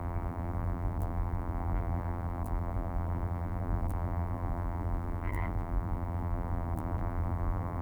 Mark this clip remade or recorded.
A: remade